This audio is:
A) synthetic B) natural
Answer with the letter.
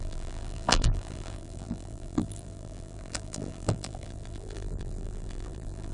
A